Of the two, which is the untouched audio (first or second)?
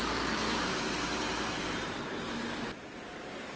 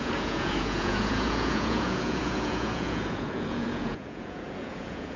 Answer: first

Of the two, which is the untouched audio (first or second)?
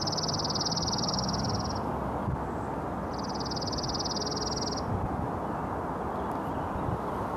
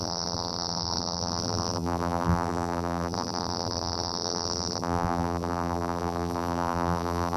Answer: first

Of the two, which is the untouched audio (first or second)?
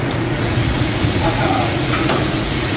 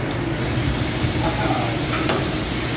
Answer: second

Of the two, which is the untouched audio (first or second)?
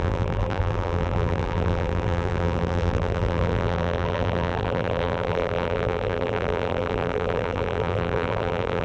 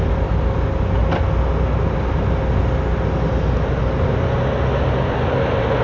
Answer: second